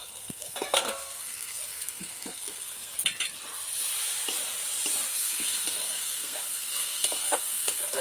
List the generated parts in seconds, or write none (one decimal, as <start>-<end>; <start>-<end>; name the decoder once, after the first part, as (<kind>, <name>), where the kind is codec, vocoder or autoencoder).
0.0-2.9 (codec, SNAC); 5.1-8.0